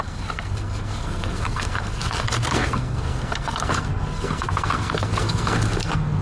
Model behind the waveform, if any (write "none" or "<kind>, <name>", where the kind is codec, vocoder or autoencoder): codec, SNAC